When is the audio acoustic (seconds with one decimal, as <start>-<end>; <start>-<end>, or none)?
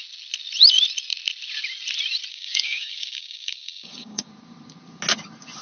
0.0-2.3; 4.3-5.6